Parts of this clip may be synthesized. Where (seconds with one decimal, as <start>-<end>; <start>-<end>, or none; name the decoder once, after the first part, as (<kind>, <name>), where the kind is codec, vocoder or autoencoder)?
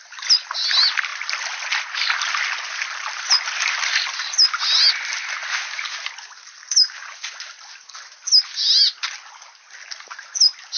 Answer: none